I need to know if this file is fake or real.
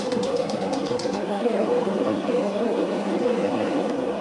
fake